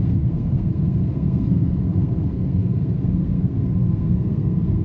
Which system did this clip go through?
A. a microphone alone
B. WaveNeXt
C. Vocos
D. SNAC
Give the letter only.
D